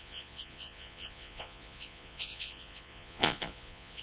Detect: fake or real fake